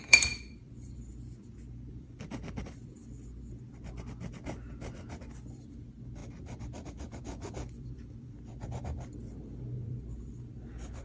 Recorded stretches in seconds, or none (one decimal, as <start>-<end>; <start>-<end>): 1.1-1.9; 3.0-5.5